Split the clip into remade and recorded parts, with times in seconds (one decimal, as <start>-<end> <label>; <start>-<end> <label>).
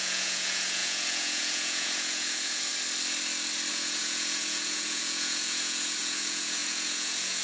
0.0-2.7 remade; 2.7-3.7 recorded; 3.7-7.4 remade